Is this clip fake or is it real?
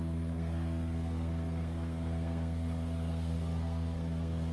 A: fake